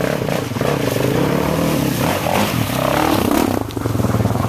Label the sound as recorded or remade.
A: remade